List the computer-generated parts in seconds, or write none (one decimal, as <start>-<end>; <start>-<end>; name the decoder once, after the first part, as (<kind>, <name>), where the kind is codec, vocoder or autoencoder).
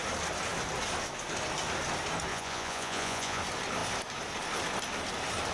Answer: 2.3-3.4 (vocoder, Vocos)